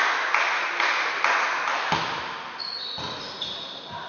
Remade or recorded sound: recorded